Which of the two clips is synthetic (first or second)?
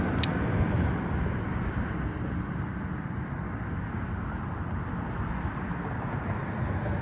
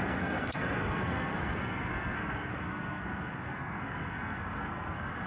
second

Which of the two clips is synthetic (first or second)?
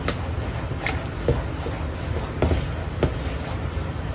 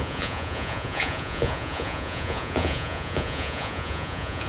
second